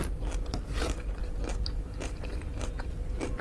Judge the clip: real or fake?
fake